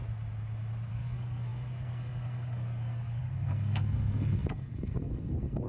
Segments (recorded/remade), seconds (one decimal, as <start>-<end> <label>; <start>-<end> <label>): 0.0-0.9 recorded; 0.9-5.7 remade